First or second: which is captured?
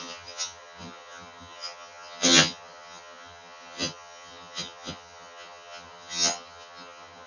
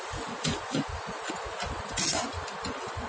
second